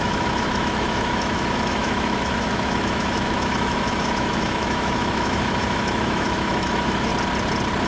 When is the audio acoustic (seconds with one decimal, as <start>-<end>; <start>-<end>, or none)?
7.1-7.9